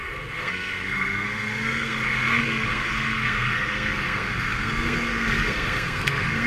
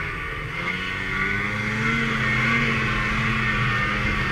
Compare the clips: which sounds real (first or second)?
second